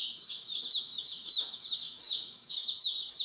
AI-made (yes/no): yes